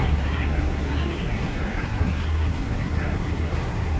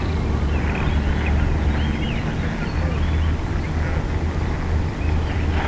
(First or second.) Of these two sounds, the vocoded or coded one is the first